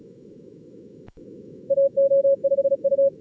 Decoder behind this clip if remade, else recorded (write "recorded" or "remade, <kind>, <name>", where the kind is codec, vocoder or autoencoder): remade, autoencoder, DAC-VAE